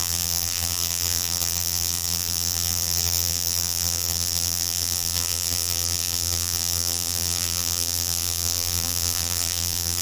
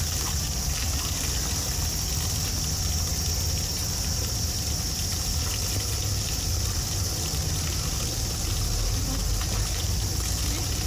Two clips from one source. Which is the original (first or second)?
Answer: second